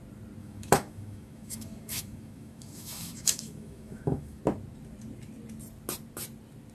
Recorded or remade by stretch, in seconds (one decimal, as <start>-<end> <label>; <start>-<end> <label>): 0.0-0.4 recorded; 0.4-4.4 remade; 4.4-6.7 recorded